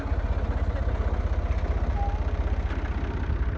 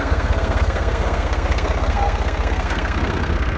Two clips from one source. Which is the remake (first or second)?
second